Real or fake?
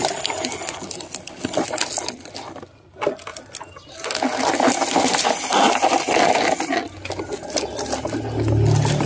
real